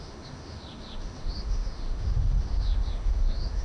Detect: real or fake fake